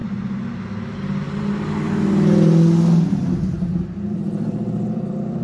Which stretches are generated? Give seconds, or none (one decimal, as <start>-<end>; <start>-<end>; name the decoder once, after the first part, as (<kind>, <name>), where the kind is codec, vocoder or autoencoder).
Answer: 3.2-5.4 (vocoder, BigVGAN v2)